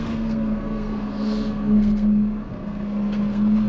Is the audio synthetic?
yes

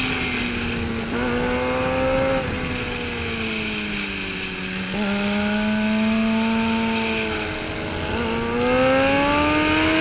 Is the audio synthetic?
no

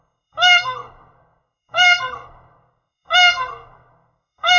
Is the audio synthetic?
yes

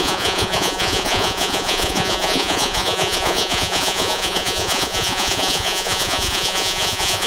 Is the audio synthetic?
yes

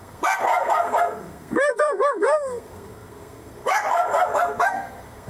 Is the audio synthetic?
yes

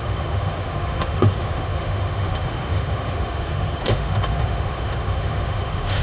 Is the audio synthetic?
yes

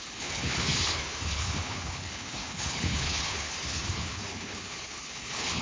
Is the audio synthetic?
yes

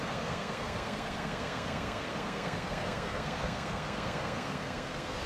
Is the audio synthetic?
yes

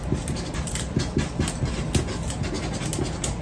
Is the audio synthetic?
no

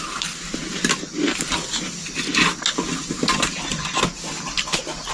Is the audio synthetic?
no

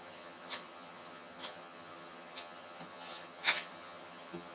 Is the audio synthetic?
yes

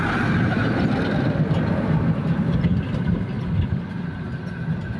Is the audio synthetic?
no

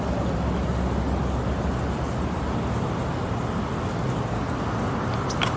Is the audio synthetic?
no